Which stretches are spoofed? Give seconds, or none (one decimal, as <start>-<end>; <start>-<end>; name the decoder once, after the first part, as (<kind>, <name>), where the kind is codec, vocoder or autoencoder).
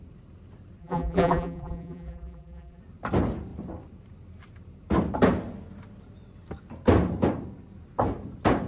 0.8-2.8 (vocoder, BigVGAN v2)